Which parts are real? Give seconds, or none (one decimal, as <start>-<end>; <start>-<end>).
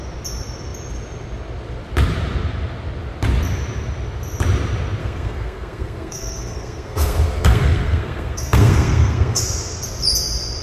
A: 0.0-5.0; 9.4-10.6